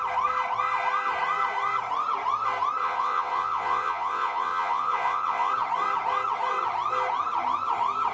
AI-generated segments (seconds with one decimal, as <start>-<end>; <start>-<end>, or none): 2.8-5.5